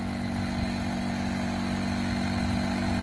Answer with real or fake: real